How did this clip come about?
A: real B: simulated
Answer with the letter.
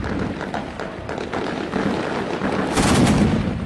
A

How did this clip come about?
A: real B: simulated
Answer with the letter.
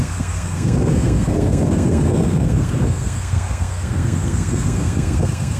B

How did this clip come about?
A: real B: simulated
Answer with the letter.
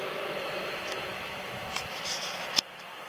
B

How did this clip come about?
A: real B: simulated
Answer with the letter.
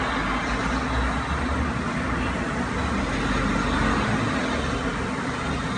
A